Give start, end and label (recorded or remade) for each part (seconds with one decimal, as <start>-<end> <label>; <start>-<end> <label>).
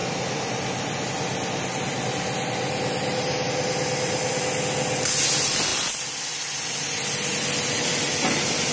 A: 0.0-8.7 recorded